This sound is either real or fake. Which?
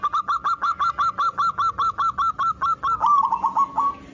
real